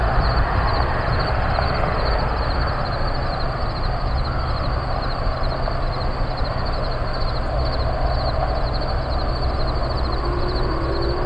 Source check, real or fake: real